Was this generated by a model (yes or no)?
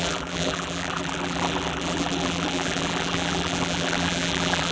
yes